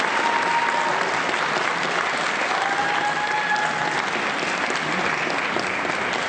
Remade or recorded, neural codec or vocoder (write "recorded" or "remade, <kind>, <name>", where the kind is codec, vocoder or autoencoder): recorded